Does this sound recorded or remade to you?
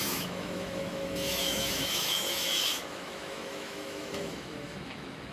remade